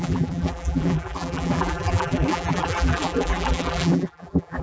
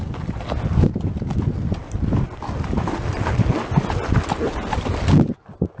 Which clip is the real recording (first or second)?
second